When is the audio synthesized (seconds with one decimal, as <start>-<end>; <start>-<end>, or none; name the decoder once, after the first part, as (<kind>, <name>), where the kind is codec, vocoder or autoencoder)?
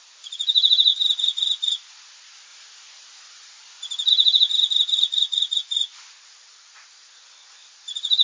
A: none